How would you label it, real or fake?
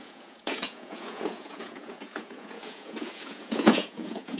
fake